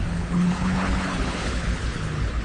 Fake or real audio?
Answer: fake